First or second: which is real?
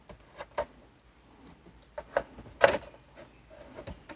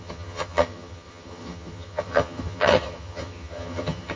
first